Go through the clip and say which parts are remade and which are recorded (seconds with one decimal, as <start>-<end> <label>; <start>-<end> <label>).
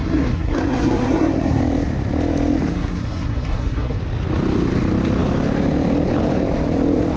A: 0.0-1.6 remade; 1.6-2.7 recorded; 2.7-4.0 remade; 4.0-7.2 recorded